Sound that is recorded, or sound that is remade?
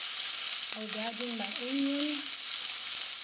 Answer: recorded